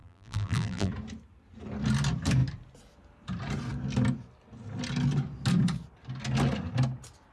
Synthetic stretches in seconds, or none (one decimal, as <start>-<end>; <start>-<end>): 0.0-0.9